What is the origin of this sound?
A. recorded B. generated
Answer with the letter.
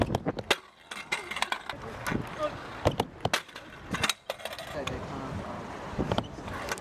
A